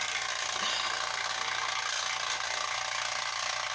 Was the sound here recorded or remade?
recorded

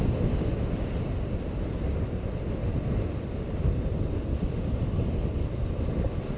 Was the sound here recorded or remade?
recorded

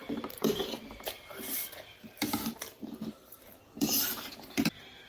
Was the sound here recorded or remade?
remade